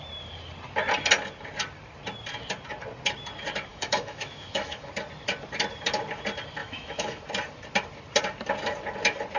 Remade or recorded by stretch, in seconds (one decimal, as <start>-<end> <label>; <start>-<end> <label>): 0.0-3.7 recorded; 3.7-4.9 remade; 4.9-6.6 recorded; 6.6-7.2 remade; 7.2-9.4 recorded